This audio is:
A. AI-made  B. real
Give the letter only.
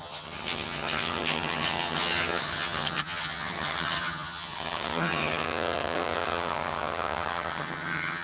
A